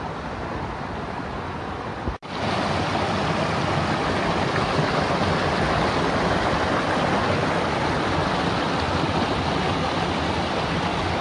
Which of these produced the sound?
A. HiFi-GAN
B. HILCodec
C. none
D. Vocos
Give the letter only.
C